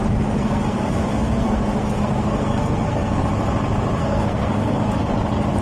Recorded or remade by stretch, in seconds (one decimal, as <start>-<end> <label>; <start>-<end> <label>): 0.0-0.4 recorded; 0.4-3.2 remade; 3.2-4.0 recorded; 4.0-5.1 remade; 5.1-5.6 recorded